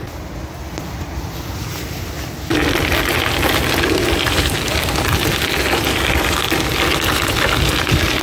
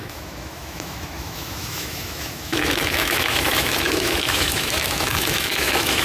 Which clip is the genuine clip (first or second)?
first